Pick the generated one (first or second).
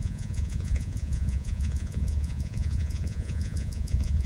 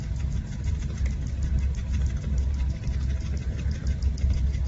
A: first